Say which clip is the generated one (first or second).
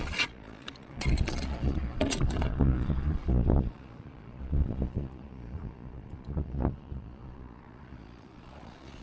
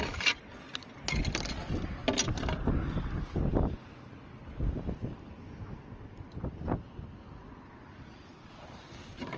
first